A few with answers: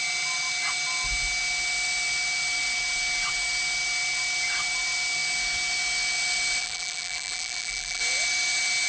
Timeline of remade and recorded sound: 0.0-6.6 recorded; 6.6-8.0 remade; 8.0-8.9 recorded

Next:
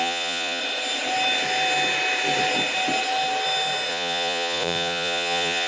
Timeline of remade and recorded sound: 0.0-0.6 remade; 0.6-3.9 recorded; 3.9-5.7 remade

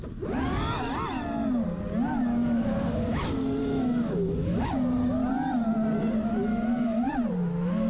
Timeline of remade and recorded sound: 0.0-2.4 recorded; 2.4-3.2 remade; 3.2-3.6 recorded; 3.6-4.7 remade; 4.7-6.5 recorded; 6.5-7.1 remade; 7.1-7.9 recorded